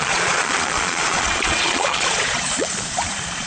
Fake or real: fake